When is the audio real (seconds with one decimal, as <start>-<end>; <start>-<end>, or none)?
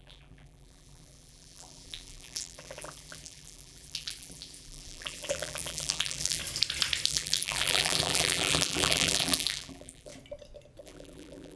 6.4-7.1; 10.1-10.8